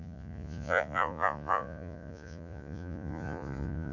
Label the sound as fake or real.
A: fake